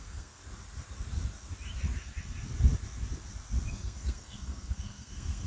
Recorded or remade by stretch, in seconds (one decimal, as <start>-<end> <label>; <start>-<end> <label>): 0.0-0.4 remade; 0.4-3.7 recorded; 3.7-5.5 remade